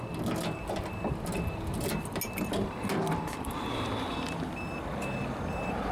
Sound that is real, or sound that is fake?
real